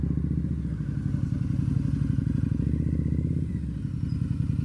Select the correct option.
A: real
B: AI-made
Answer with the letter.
A